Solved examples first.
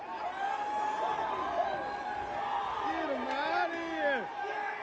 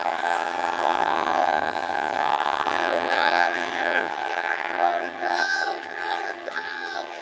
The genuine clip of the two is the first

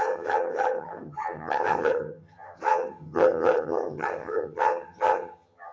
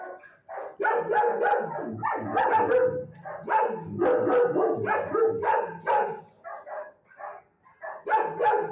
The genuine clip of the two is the second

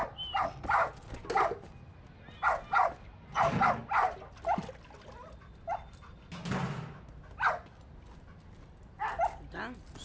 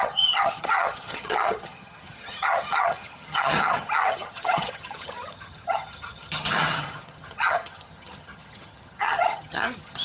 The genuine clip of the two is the first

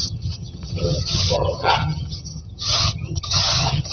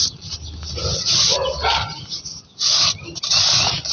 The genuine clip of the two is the second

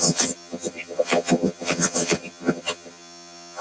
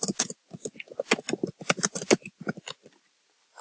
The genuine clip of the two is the second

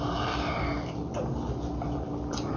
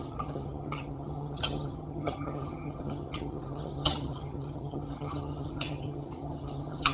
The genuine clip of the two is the first